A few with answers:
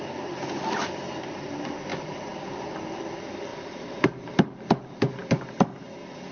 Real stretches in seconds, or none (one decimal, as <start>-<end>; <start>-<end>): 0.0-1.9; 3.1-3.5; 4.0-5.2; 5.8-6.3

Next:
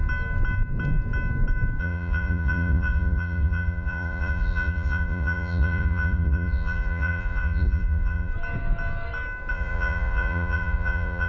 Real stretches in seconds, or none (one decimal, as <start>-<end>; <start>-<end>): 0.0-1.8; 8.3-9.5

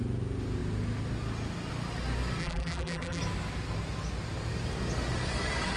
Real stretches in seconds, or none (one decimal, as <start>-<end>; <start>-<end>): 0.0-2.4; 3.2-5.8

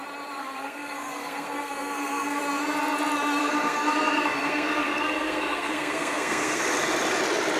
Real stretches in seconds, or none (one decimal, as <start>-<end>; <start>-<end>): 0.0-0.4; 2.4-3.4; 6.6-7.6

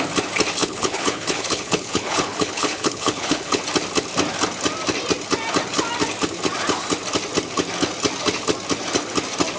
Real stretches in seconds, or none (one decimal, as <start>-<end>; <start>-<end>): 0.0-0.6; 3.6-9.6